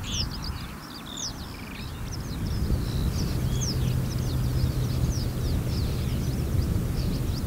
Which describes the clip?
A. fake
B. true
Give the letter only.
B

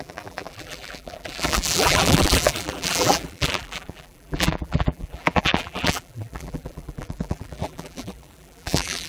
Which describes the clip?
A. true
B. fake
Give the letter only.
B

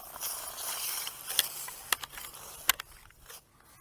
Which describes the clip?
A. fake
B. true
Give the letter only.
B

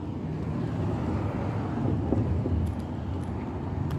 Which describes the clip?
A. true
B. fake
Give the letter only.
A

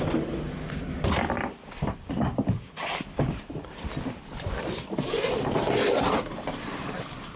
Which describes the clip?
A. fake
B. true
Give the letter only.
A